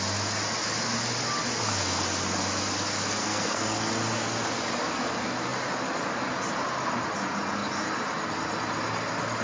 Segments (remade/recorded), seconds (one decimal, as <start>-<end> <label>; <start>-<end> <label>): 0.0-3.2 recorded; 3.2-3.9 remade; 3.9-9.4 recorded